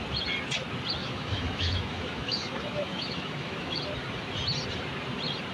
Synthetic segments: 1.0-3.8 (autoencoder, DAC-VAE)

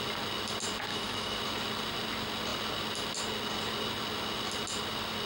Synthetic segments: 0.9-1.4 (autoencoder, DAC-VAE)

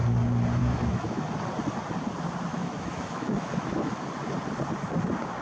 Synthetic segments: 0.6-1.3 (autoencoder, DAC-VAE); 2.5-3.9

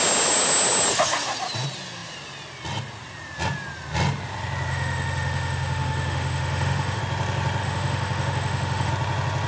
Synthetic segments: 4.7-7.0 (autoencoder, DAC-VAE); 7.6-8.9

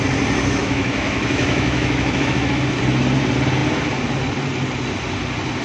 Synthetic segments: 0.6-2.8 (autoencoder, DAC-VAE)

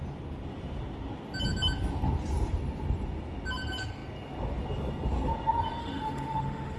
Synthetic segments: 5.8-6.8 (autoencoder, DAC-VAE)

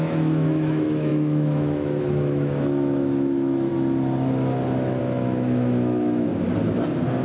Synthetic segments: 0.0-3.7 (autoencoder, DAC-VAE); 5.0-6.3